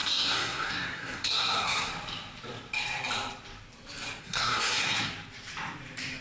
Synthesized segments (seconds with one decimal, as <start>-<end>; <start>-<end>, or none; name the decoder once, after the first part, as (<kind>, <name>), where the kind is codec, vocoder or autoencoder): 0.0-1.9 (codec, SNAC); 4.2-5.1